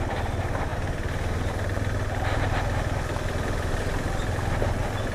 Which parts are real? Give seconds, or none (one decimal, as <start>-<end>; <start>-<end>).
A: 0.0-5.1